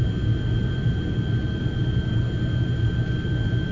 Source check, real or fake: real